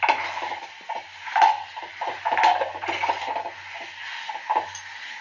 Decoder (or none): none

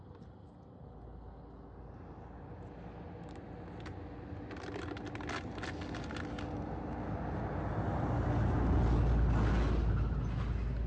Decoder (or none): none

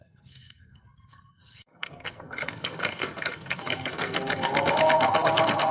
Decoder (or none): codec, SNAC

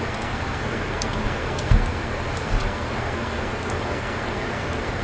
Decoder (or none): codec, SNAC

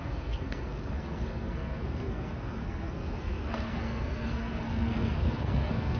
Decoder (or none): codec, SNAC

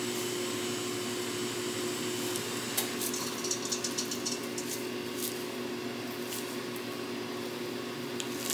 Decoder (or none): none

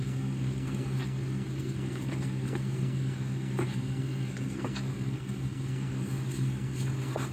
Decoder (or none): codec, SNAC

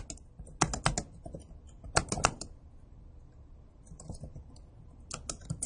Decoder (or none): none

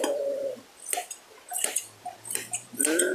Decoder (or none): none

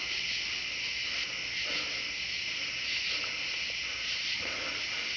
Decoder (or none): none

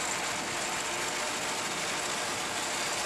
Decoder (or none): none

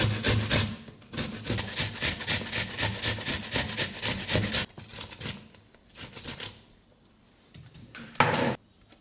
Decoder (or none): none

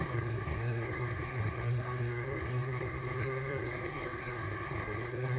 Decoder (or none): codec, SNAC